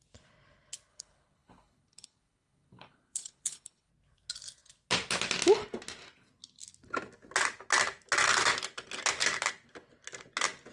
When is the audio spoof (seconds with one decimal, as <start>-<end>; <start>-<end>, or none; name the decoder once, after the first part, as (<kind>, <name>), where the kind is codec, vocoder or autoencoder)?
0.9-3.9 (codec, HILCodec)